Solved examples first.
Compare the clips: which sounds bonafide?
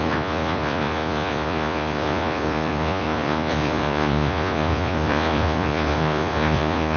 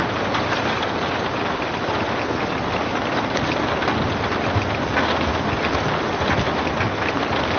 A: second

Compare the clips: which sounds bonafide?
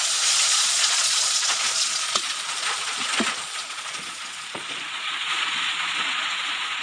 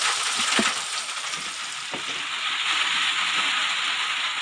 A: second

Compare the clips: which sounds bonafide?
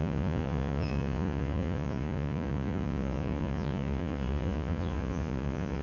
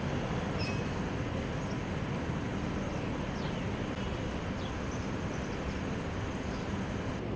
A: second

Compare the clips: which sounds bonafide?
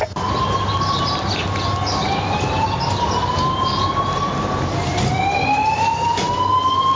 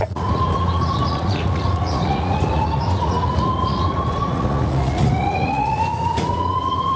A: first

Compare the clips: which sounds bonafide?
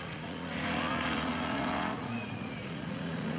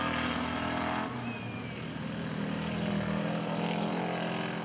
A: second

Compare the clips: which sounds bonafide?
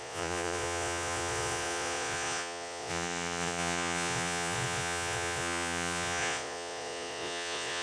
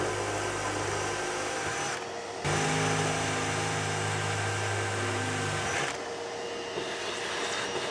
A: second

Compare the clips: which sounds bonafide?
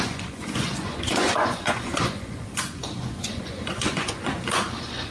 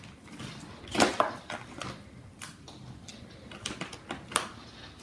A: second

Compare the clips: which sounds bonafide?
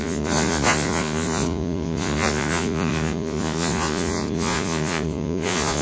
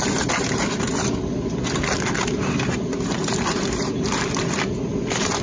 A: second